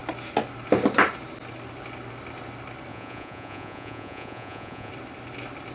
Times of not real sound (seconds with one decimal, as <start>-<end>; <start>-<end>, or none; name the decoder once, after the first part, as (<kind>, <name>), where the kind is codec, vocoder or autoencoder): 2.9-4.9 (vocoder, Vocos)